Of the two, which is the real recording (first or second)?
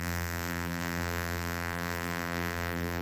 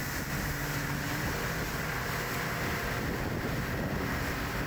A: second